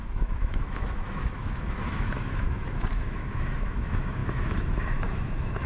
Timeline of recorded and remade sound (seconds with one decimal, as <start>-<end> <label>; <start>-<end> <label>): 0.0-5.7 remade